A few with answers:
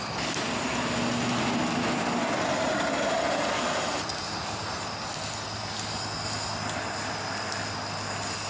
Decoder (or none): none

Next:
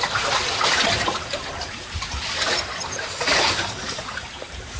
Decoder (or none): none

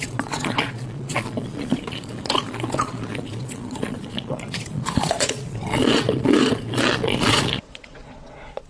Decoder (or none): vocoder, Vocos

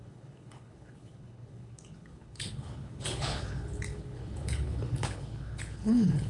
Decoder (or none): codec, HILCodec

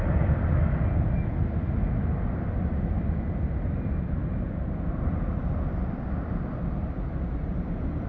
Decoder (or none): none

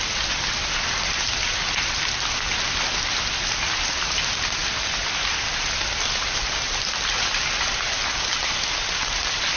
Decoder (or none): none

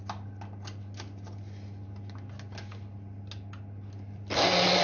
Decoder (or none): none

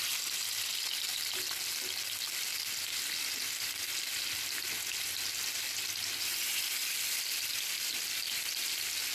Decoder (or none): none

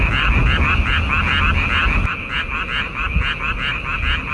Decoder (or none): none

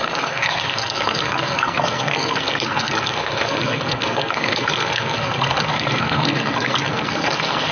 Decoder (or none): codec, SNAC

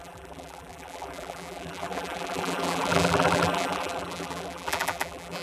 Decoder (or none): vocoder, BigVGAN v2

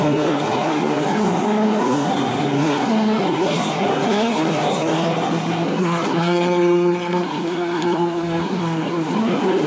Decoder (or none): codec, SNAC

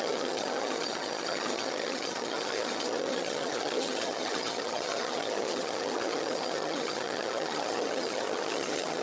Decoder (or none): vocoder, HiFi-GAN